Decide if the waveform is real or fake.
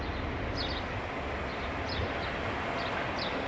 real